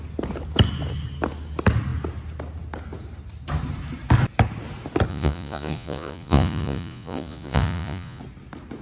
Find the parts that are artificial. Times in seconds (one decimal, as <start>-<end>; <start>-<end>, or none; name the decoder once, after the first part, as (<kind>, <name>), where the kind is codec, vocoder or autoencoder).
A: 5.1-8.2 (vocoder, Vocos)